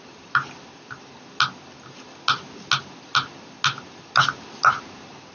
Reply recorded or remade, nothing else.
recorded